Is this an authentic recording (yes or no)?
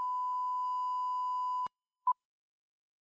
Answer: no